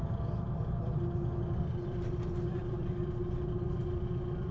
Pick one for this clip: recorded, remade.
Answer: recorded